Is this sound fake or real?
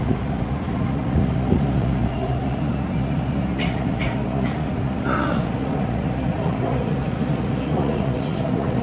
fake